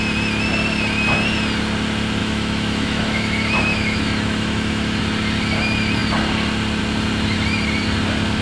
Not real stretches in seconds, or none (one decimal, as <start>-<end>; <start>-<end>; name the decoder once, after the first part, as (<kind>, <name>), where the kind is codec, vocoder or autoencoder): 2.2-5.0 (autoencoder, DAC-VAE)

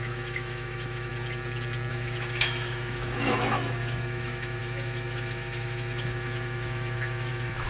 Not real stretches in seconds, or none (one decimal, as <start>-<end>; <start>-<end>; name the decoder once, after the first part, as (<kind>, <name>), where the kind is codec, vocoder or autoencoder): 0.0-1.1 (autoencoder, DAC-VAE); 1.9-7.7

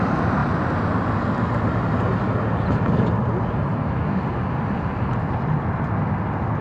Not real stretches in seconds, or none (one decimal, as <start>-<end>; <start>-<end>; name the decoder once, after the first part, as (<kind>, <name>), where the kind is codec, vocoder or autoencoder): 3.7-4.2 (autoencoder, DAC-VAE)

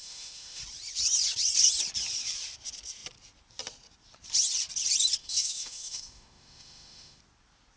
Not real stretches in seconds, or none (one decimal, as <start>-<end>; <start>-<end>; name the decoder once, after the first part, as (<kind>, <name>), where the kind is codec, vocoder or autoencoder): 0.0-0.6 (autoencoder, DAC-VAE); 5.2-7.2